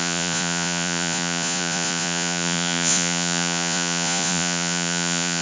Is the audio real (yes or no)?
no